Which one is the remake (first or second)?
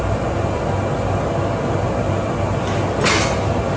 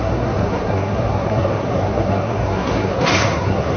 second